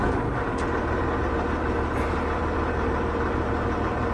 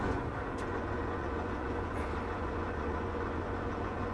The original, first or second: first